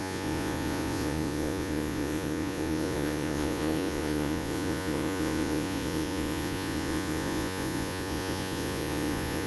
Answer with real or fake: fake